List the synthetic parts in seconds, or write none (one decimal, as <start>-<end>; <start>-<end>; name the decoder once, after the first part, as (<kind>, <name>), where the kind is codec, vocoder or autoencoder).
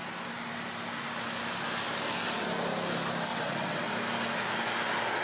3.3-3.9 (vocoder, WaveNeXt)